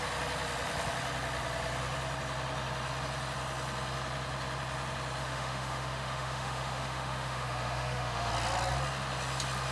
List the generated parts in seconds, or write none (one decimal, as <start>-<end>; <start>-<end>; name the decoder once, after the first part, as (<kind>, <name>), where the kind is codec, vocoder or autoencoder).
5.2-8.3 (autoencoder, DAC-VAE)